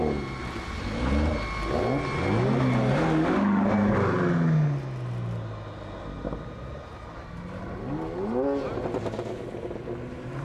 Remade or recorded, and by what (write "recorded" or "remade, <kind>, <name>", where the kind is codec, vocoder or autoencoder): recorded